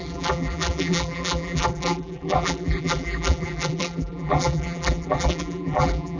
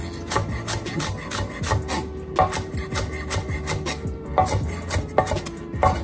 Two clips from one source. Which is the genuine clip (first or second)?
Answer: second